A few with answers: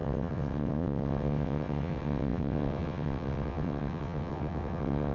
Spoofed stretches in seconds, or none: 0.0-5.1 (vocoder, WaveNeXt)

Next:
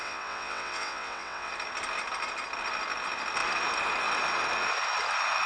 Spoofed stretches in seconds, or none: 0.0-1.5 (vocoder, WaveNeXt)

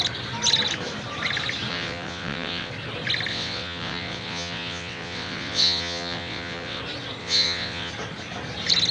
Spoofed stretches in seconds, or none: 1.7-2.7 (vocoder, WaveNeXt); 3.3-6.8; 7.2-7.9

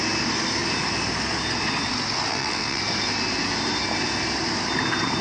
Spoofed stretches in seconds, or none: 2.3-2.8 (vocoder, WaveNeXt)

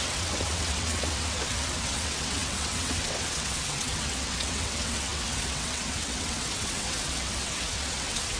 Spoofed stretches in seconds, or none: 0.0-8.4 (vocoder, WaveNeXt)

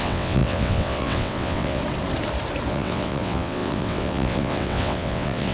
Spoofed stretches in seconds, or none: 0.0-1.8 (vocoder, WaveNeXt); 2.7-5.5